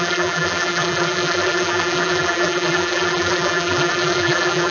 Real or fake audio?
fake